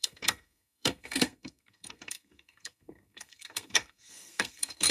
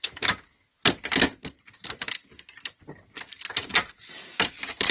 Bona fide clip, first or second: second